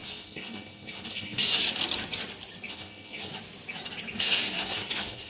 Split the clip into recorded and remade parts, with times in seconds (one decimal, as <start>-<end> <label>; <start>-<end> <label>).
0.0-1.6 remade; 1.6-2.7 recorded; 2.7-3.3 remade; 3.3-4.2 recorded; 4.2-5.3 remade

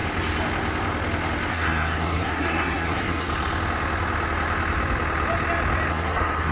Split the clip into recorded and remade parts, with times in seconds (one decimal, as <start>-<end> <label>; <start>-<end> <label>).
0.0-1.5 recorded; 1.5-3.3 remade; 3.3-5.9 recorded; 5.9-6.5 remade

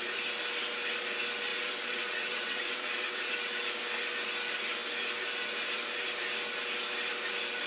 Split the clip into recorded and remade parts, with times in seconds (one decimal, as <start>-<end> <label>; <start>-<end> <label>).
0.0-1.5 recorded; 1.5-3.3 remade; 3.3-7.7 recorded

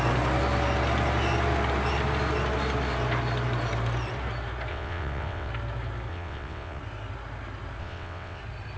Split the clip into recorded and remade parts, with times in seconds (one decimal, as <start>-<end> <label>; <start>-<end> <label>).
0.0-4.7 recorded; 4.7-5.5 remade; 5.5-6.1 recorded; 6.1-6.8 remade; 6.8-7.8 recorded; 7.8-8.4 remade; 8.4-8.8 recorded

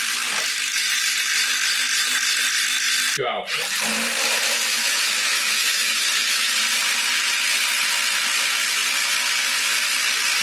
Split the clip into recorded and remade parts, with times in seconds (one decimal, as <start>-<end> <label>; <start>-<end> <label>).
0.0-4.7 recorded; 4.7-6.5 remade; 6.5-10.4 recorded

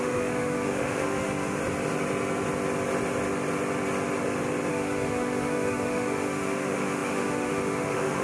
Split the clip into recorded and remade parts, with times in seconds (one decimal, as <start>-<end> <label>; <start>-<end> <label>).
0.0-1.6 remade; 1.6-4.7 recorded; 4.7-8.2 remade